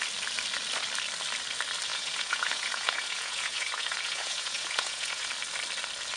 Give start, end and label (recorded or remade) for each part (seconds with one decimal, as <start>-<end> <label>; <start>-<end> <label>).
0.0-1.9 recorded; 1.9-5.3 remade; 5.3-6.2 recorded